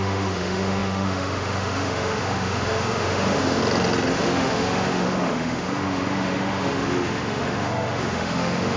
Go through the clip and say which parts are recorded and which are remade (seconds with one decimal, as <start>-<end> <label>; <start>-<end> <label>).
0.0-3.6 remade; 3.6-4.1 recorded; 4.1-8.8 remade